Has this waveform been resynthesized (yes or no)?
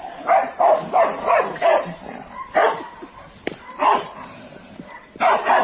yes